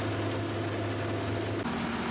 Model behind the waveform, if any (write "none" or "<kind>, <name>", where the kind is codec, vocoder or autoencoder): none